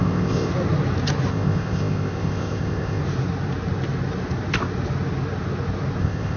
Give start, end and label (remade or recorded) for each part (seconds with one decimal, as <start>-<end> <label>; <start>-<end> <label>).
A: 0.0-0.5 remade; 0.5-1.3 recorded; 1.3-3.0 remade; 3.0-6.0 recorded; 6.0-6.4 remade